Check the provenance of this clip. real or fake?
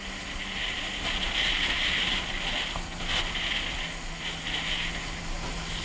real